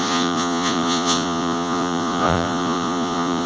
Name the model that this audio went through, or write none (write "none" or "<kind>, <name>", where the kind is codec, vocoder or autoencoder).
vocoder, Vocos